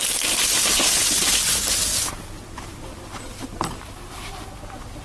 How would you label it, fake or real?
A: real